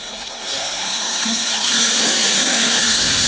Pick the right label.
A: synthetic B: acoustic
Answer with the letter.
A